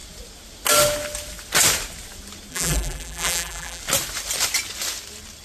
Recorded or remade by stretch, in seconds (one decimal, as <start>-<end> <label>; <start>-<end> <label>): 0.0-2.5 recorded; 2.5-3.8 remade; 3.8-5.4 recorded